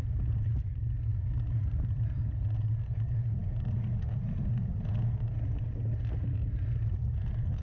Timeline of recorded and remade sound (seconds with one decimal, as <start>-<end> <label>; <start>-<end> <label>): 0.0-1.1 recorded; 1.1-2.2 remade; 2.2-7.6 recorded